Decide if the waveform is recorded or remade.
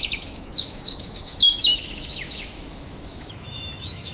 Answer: remade